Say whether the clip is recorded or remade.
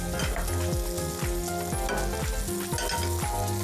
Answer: recorded